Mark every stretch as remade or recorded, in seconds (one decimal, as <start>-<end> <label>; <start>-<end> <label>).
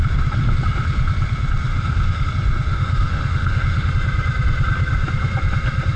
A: 0.0-1.7 recorded; 1.7-2.3 remade; 2.3-2.7 recorded; 2.7-3.9 remade; 3.9-6.0 recorded